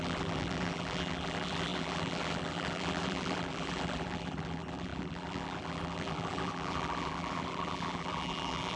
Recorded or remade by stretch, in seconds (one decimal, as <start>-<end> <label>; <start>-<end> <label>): 0.0-8.8 remade